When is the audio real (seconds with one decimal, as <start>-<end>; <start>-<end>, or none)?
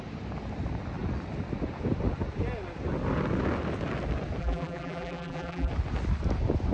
0.0-4.4; 5.7-6.7